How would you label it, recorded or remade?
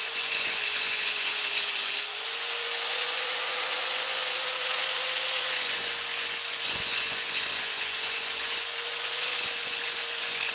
remade